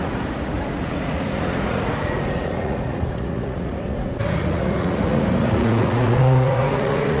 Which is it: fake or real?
fake